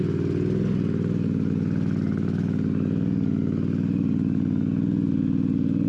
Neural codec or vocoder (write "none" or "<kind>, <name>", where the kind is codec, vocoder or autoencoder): none